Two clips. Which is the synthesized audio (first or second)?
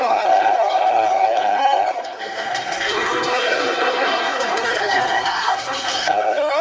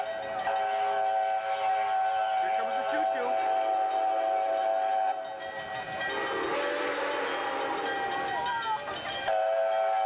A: first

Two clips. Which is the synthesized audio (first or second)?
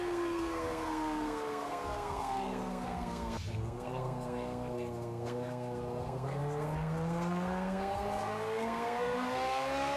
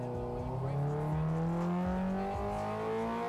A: first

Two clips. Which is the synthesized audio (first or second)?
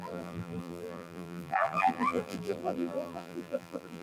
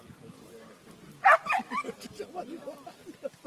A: first